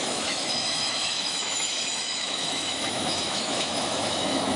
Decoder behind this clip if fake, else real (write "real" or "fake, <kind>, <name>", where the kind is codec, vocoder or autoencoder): fake, autoencoder, DAC-VAE